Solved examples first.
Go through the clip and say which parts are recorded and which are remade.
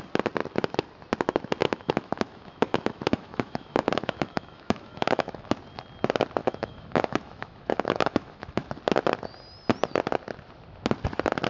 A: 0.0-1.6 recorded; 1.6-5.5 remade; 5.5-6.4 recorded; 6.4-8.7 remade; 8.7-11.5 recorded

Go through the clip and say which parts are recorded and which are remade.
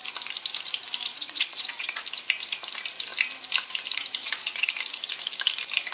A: 0.0-1.1 recorded; 1.1-2.0 remade; 2.0-4.2 recorded; 4.2-4.7 remade; 4.7-5.9 recorded